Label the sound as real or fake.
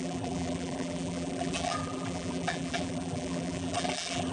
fake